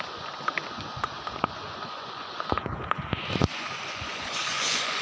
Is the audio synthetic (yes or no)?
yes